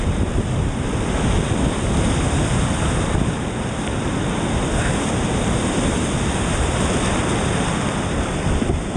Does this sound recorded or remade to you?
recorded